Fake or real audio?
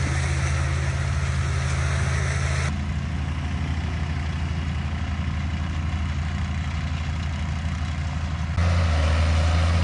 real